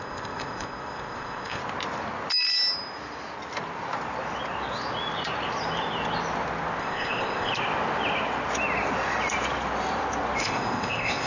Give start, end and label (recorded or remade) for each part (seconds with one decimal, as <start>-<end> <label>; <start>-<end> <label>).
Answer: 0.0-1.6 remade; 1.6-6.8 recorded; 6.8-7.5 remade; 7.5-10.4 recorded; 10.4-11.3 remade